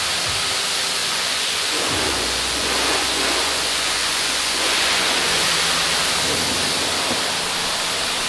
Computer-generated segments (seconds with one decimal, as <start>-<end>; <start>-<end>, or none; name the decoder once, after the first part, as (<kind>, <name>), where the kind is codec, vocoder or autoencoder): 1.0-5.5 (vocoder, Vocos)